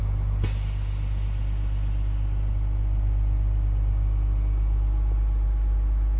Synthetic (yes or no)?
no